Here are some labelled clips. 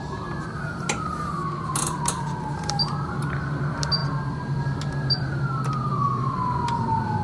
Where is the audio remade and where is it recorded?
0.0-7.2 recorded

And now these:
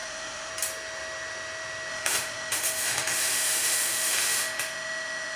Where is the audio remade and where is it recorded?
0.0-0.5 remade; 0.5-1.9 recorded; 1.9-5.4 remade

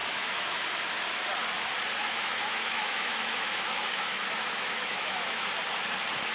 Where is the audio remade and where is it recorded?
0.0-0.7 remade; 0.7-2.0 recorded; 2.0-5.5 remade; 5.5-6.3 recorded

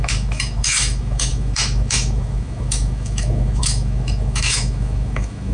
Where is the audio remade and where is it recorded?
0.0-5.5 remade

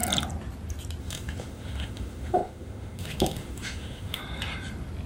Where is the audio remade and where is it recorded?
0.0-1.0 recorded; 1.0-4.2 remade; 4.2-5.1 recorded

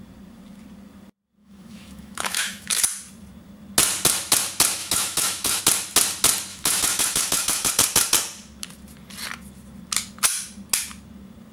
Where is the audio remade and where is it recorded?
0.0-1.4 recorded; 1.4-2.8 remade; 2.8-4.8 recorded; 4.8-5.6 remade; 5.6-6.5 recorded; 6.5-7.7 remade; 7.7-11.5 recorded

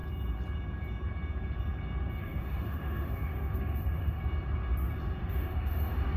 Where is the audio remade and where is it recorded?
0.0-2.2 recorded; 2.2-4.2 remade; 4.2-5.2 recorded; 5.2-6.2 remade

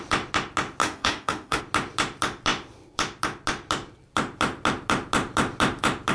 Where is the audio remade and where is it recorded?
0.0-0.8 recorded; 0.8-1.6 remade; 1.6-6.1 recorded